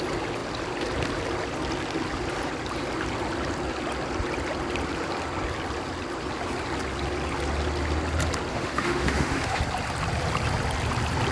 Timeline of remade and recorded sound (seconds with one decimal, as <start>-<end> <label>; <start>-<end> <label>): 0.0-8.5 recorded; 8.5-9.6 remade; 9.6-11.3 recorded